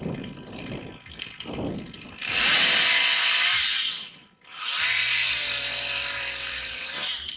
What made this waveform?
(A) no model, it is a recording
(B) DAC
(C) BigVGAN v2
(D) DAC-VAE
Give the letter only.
A